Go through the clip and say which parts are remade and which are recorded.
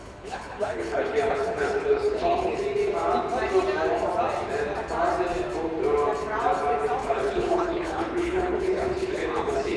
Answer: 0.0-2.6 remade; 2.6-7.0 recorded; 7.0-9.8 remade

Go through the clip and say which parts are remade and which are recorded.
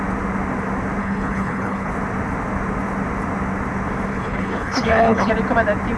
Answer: 0.0-1.0 recorded; 1.0-1.9 remade; 1.9-4.1 recorded; 4.1-5.3 remade; 5.3-6.0 recorded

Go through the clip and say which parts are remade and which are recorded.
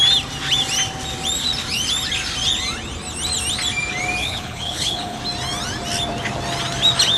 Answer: 0.0-4.2 recorded; 4.2-5.2 remade; 5.2-7.2 recorded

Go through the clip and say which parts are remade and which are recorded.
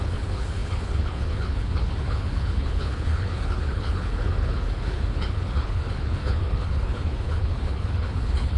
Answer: 0.0-8.6 remade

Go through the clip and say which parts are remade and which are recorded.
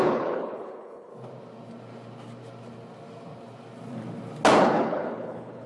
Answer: 0.0-1.1 remade; 1.1-4.5 recorded; 4.5-5.7 remade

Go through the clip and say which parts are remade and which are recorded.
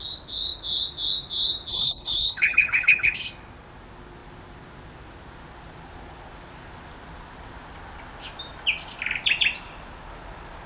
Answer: 0.0-1.7 recorded; 1.7-3.3 remade; 3.3-10.7 recorded